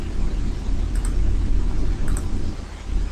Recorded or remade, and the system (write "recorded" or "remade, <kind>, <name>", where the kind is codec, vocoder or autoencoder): recorded